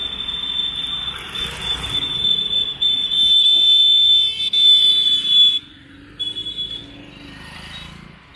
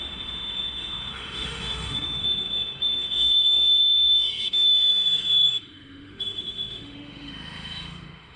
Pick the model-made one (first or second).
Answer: second